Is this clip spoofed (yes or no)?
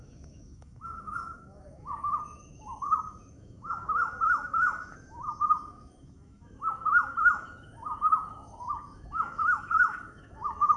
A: yes